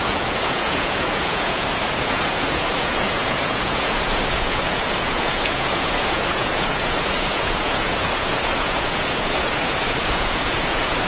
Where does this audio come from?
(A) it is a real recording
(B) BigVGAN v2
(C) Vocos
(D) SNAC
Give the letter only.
C